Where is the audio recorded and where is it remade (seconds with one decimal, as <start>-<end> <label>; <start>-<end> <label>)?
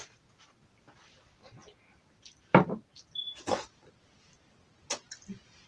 0.0-5.7 recorded